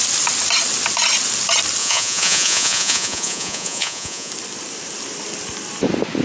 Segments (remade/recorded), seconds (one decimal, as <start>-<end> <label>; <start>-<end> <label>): 0.0-1.8 recorded; 1.8-4.3 remade; 4.3-6.2 recorded